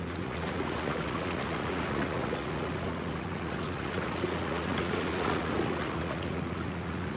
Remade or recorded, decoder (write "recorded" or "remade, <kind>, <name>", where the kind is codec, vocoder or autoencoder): remade, vocoder, Vocos